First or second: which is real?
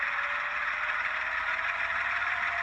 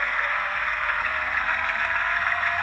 first